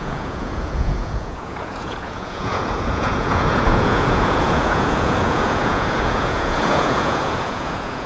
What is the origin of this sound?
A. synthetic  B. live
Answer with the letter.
A